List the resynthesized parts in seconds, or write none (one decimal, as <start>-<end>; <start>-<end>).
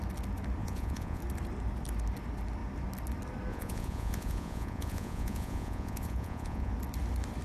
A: 0.6-1.2; 3.5-6.7